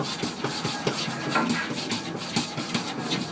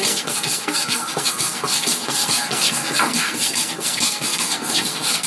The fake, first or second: second